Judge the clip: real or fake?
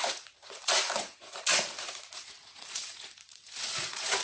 fake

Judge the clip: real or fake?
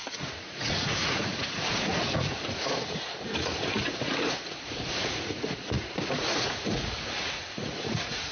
fake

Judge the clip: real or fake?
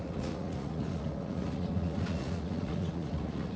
fake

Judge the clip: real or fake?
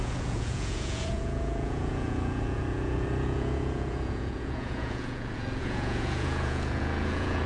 fake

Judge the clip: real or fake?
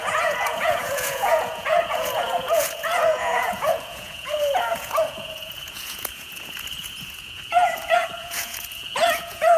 fake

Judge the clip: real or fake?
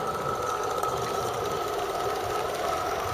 real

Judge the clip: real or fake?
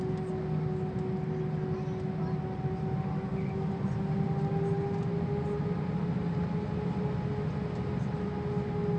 real